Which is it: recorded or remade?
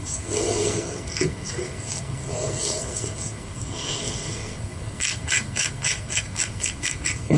remade